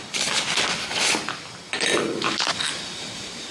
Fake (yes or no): no